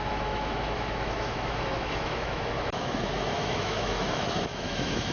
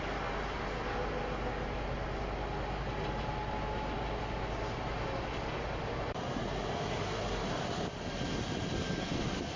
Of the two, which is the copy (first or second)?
first